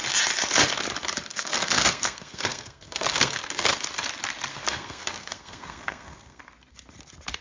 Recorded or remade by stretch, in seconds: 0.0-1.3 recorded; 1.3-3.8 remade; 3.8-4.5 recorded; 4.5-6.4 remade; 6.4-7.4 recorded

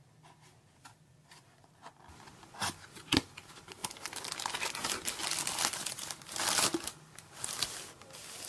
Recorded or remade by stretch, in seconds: 0.0-8.5 recorded

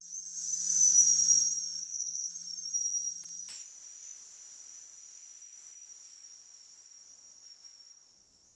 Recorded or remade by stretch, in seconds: 0.0-1.8 recorded; 1.8-2.3 remade; 2.3-8.5 recorded

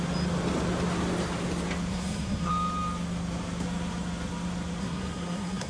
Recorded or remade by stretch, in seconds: 0.0-1.9 recorded; 1.9-2.5 remade; 2.5-4.8 recorded; 4.8-5.7 remade

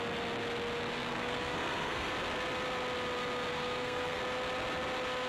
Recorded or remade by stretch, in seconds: 0.0-0.9 recorded; 0.9-2.1 remade; 2.1-3.5 recorded; 3.5-4.2 remade; 4.2-5.3 recorded

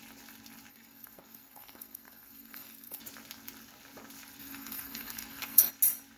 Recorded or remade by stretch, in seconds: 0.0-0.7 recorded; 0.7-3.0 remade; 3.0-4.4 recorded; 4.4-5.7 remade; 5.7-6.2 recorded

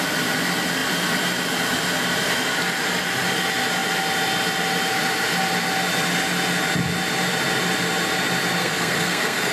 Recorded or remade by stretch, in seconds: 0.0-8.6 recorded; 8.6-9.5 remade

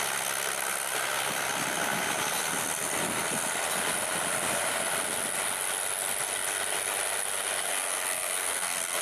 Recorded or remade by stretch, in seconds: 0.0-7.7 recorded; 7.7-9.0 remade